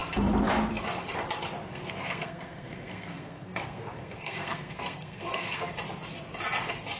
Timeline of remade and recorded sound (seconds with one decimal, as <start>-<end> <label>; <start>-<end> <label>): 0.0-1.6 recorded; 1.6-5.7 remade; 5.7-7.0 recorded